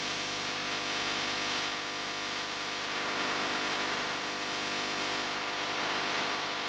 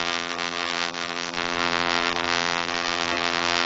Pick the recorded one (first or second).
first